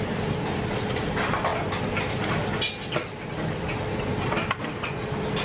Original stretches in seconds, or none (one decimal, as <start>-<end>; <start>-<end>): 0.0-5.4